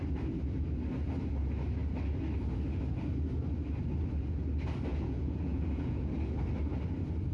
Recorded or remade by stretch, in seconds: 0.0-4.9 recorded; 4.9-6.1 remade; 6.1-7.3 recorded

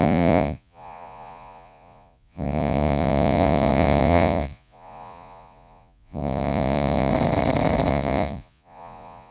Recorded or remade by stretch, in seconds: 0.0-7.1 remade; 7.1-7.9 recorded; 7.9-9.3 remade

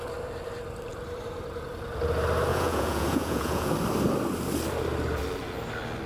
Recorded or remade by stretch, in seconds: 0.0-2.5 recorded; 2.5-3.7 remade; 3.7-6.1 recorded

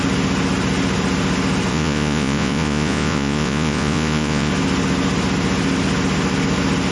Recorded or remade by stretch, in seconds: 0.0-1.7 recorded; 1.7-4.5 remade; 4.5-6.9 recorded

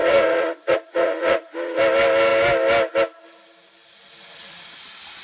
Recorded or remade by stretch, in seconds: 0.0-1.8 remade; 1.8-5.2 recorded